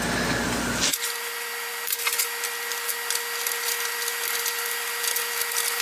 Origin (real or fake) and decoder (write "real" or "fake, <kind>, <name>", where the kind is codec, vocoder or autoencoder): real